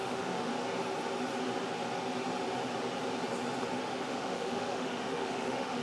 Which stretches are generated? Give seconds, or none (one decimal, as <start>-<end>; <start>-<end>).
0.0-0.5; 4.0-5.8